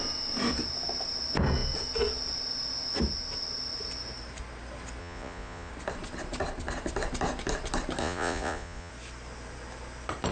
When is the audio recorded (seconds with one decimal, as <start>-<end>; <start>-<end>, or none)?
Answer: 0.0-5.0; 5.7-8.0; 8.9-10.3